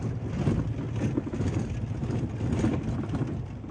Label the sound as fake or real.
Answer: real